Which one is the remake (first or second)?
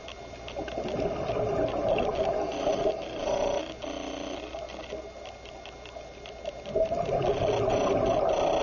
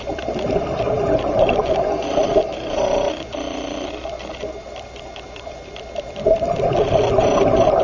second